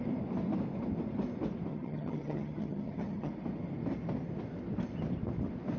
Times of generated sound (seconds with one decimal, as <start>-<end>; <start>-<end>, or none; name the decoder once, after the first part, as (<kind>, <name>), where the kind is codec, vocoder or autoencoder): 1.7-3.3 (vocoder, HiFi-GAN)